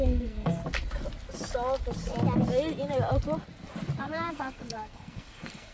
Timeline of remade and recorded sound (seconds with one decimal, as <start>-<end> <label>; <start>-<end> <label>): 0.0-0.6 remade; 0.6-4.0 recorded; 4.0-5.7 remade